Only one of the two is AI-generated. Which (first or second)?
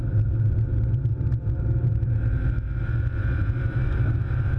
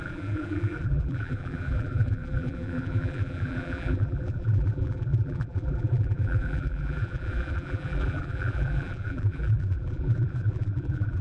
second